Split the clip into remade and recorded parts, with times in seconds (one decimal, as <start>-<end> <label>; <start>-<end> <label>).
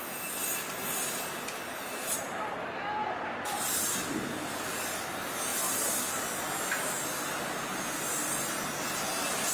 0.0-3.0 recorded; 3.0-5.0 remade; 5.0-9.5 recorded